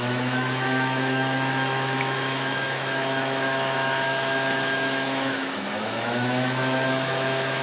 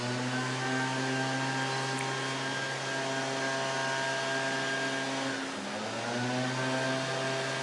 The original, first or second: second